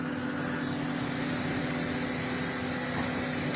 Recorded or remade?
recorded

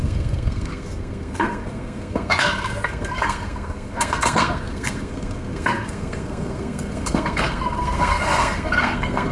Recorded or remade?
remade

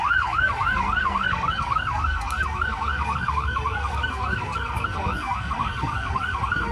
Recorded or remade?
remade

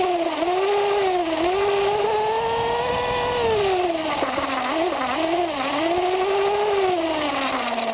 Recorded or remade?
recorded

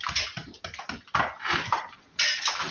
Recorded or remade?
recorded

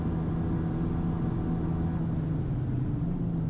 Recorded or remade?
recorded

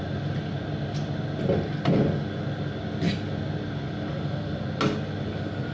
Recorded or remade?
recorded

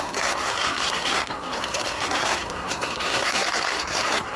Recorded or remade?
remade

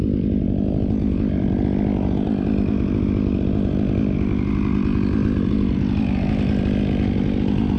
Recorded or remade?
recorded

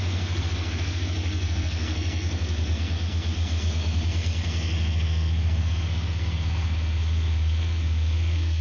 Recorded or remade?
remade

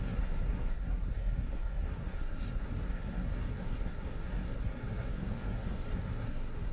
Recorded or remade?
remade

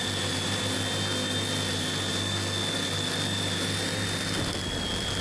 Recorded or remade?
recorded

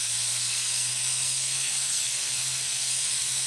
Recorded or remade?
remade